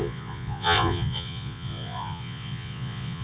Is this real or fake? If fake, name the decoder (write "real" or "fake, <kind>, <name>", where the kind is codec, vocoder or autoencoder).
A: fake, vocoder, Vocos